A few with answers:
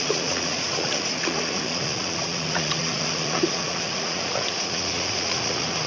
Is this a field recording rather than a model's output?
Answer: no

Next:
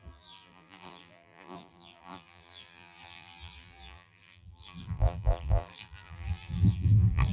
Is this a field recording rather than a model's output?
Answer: no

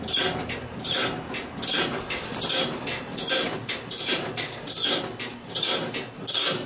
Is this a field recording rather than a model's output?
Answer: yes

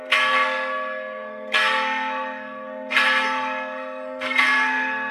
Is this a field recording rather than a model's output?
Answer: no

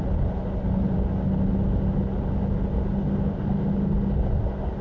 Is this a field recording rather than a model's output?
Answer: yes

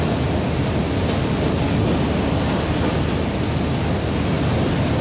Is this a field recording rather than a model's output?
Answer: yes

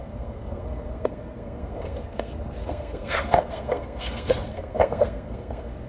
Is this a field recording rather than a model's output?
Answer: no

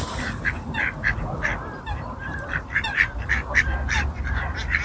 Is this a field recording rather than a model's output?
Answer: no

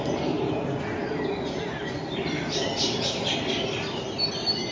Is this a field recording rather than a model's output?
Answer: yes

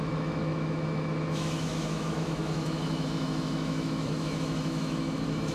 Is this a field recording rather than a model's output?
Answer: no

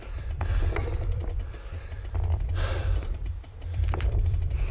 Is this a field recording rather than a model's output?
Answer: no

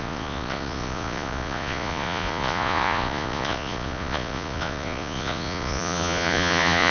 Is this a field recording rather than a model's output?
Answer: no